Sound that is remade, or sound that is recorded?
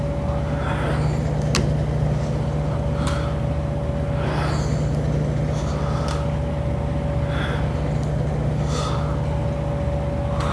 recorded